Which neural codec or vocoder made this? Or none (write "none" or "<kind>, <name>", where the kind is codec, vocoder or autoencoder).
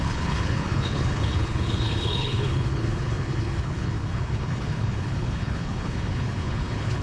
codec, HILCodec